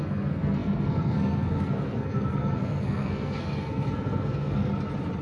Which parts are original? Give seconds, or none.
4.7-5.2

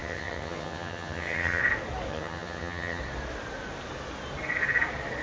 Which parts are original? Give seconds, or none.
1.6-2.1; 3.0-5.2

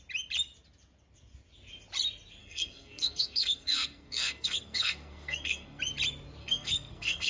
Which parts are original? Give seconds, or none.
0.0-2.4; 5.8-6.4

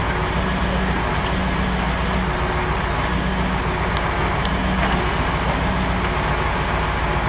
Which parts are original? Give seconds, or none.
0.0-7.3

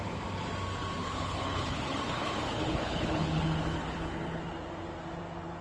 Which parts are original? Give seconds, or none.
0.0-1.0; 4.4-5.6

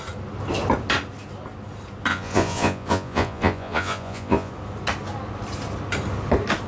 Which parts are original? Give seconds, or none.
0.0-2.1; 4.5-6.7

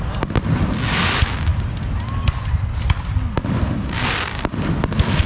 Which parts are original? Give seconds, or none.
0.0-5.3